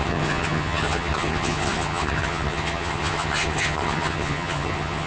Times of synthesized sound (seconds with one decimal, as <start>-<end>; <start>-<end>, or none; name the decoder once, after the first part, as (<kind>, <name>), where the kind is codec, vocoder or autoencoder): 0.0-5.1 (vocoder, HiFi-GAN)